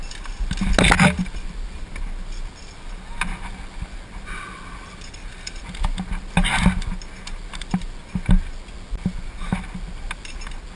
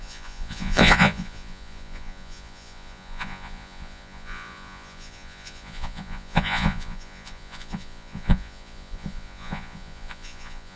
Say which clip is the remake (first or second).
second